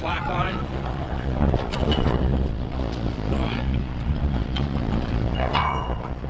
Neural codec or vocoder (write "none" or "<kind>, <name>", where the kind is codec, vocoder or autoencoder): vocoder, Vocos